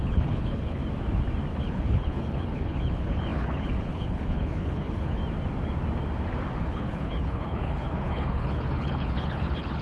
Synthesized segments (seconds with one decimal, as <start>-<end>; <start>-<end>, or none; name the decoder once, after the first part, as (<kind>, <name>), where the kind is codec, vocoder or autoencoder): 0.0-0.8 (codec, HILCodec); 1.6-5.2; 6.6-9.8